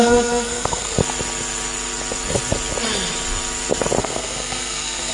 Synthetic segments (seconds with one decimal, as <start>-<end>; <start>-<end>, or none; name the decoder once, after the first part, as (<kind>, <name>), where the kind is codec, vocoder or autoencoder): 0.0-1.0 (codec, SNAC); 4.0-5.1